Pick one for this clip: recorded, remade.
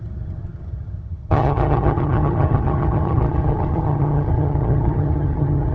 remade